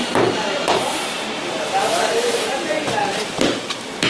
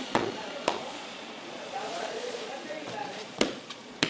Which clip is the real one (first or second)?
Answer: first